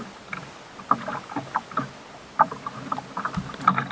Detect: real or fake real